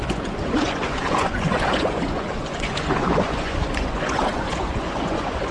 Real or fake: fake